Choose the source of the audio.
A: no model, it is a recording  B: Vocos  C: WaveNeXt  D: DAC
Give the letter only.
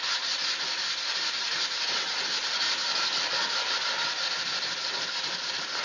A